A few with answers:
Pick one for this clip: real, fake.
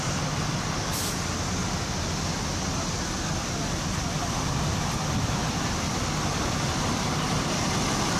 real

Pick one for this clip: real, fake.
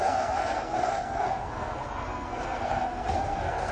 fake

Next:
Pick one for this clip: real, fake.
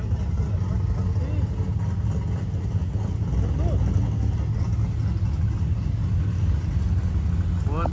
real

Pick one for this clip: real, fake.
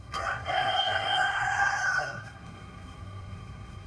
fake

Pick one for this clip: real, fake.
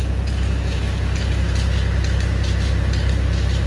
real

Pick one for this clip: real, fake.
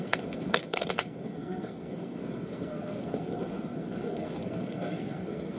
fake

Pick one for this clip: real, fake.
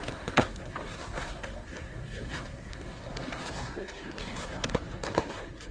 fake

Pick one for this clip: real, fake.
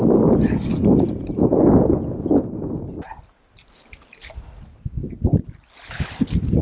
real